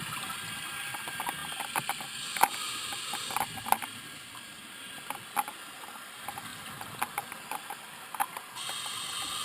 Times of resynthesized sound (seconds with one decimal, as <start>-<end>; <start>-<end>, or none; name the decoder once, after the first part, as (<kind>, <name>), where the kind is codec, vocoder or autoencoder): none